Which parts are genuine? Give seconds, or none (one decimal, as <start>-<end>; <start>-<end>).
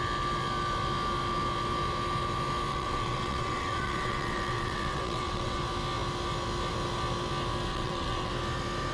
0.0-2.7; 5.6-7.7; 8.3-8.9